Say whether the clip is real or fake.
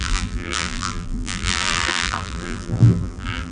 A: fake